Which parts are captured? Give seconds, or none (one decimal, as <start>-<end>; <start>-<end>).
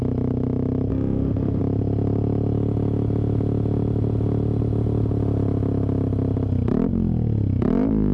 0.0-0.9; 1.6-8.1